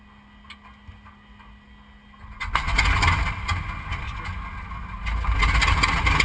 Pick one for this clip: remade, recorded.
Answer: recorded